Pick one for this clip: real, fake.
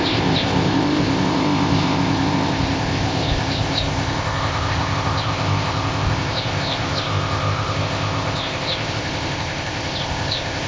fake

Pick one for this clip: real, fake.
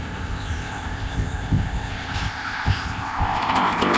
fake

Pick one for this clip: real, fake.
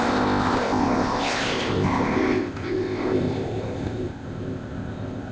fake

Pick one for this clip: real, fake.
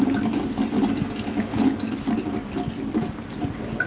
real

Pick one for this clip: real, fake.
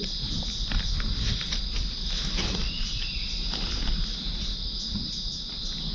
real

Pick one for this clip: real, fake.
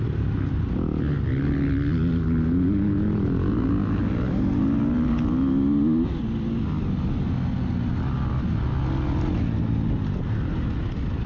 real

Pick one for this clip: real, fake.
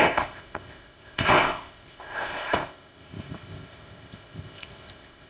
fake